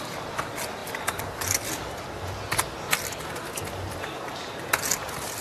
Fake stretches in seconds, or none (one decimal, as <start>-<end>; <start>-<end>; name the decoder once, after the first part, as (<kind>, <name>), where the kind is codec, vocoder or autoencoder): none